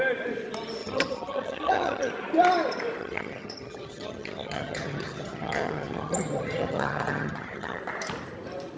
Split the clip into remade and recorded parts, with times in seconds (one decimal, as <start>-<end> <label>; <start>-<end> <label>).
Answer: 0.0-0.8 recorded; 0.8-2.1 remade; 2.1-3.0 recorded; 3.0-7.8 remade; 7.8-8.8 recorded